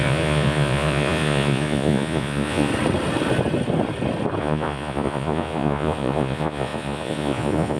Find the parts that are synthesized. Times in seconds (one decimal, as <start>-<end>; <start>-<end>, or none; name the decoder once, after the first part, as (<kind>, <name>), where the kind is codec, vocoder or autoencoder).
0.0-2.7 (vocoder, Vocos); 4.4-7.8